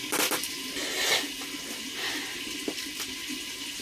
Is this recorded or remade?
recorded